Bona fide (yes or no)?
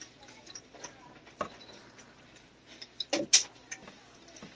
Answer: yes